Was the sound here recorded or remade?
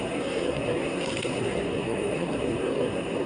remade